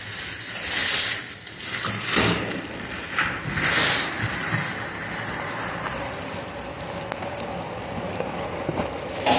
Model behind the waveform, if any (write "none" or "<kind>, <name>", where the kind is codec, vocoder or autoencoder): none